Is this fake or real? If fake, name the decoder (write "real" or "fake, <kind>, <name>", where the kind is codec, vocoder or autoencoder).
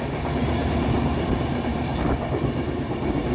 real